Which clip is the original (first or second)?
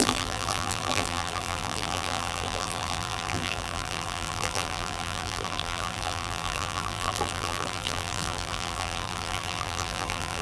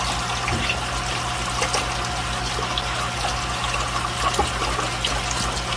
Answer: second